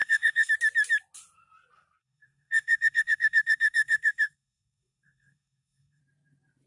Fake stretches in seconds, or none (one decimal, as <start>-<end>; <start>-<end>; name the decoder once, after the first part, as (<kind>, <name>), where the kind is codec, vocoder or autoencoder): 0.0-0.5 (codec, DAC); 2.0-6.0